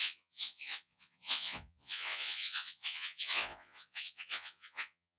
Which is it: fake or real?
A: fake